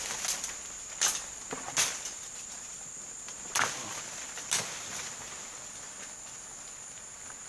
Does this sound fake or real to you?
real